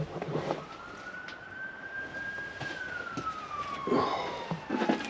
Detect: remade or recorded recorded